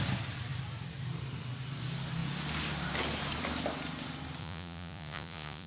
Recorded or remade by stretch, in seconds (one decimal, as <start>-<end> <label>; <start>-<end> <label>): 0.0-4.4 recorded; 4.4-5.7 remade